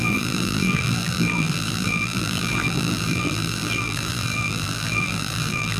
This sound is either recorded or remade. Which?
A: remade